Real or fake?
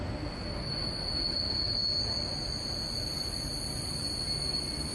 real